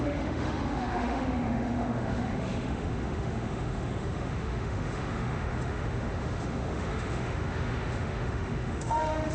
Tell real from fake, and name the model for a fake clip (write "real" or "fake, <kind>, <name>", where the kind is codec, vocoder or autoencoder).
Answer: fake, autoencoder, DAC-VAE